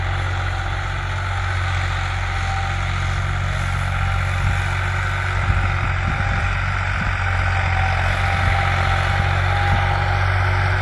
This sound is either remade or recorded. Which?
recorded